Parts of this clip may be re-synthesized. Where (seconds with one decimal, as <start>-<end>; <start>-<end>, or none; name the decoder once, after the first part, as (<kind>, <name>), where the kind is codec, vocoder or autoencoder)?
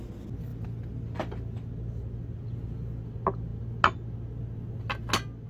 0.5-1.8 (vocoder, BigVGAN v2)